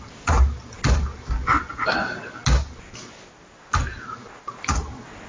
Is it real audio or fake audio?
real